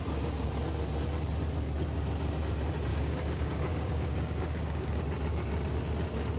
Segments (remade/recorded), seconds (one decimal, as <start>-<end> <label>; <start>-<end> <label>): 0.0-2.9 recorded; 2.9-5.0 remade; 5.0-6.4 recorded